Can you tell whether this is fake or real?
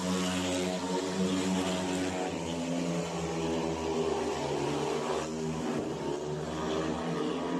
real